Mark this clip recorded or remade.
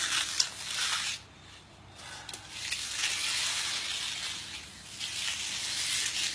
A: recorded